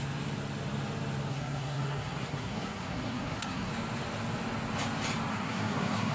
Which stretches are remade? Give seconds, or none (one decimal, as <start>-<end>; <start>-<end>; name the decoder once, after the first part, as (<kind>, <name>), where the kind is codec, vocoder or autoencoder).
1.3-3.7 (codec, SNAC); 5.3-6.1